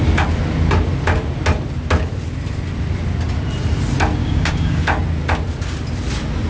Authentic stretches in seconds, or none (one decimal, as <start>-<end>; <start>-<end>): 0.0-4.2; 4.8-6.5